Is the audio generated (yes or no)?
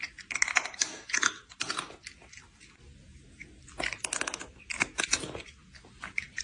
no